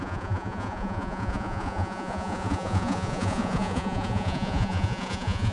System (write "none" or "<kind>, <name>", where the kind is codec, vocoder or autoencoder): vocoder, Vocos